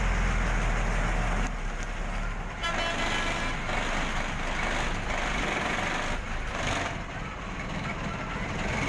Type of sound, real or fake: real